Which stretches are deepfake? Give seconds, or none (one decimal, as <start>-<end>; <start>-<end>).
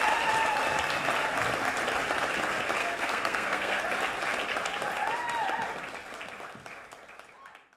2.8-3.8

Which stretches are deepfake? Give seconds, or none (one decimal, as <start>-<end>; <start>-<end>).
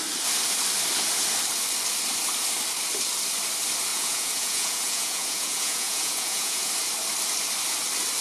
3.9-6.7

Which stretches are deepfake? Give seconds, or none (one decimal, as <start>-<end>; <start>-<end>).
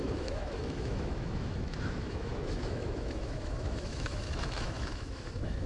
0.0-5.7